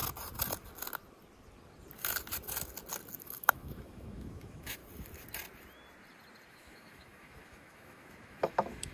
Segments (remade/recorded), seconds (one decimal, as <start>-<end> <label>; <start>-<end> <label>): 0.0-3.2 recorded; 3.2-4.8 remade; 4.8-6.5 recorded; 6.5-8.9 remade